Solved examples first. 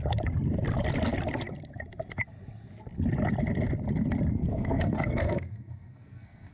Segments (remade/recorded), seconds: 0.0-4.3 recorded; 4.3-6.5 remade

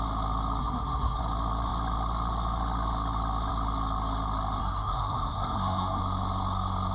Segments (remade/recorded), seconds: 0.0-0.6 recorded; 0.6-1.2 remade; 1.2-4.6 recorded; 4.6-6.0 remade; 6.0-6.9 recorded

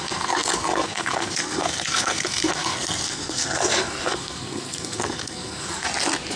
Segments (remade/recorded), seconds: 0.0-5.9 remade; 5.9-6.4 recorded